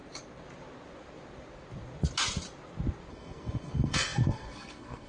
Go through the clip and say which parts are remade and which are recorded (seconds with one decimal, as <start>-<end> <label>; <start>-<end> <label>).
0.0-3.1 recorded; 3.1-5.1 remade